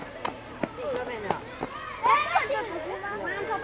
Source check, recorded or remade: remade